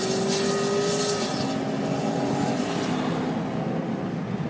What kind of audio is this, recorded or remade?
recorded